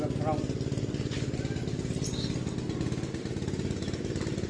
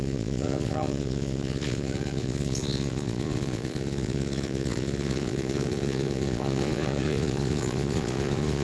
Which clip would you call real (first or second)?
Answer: first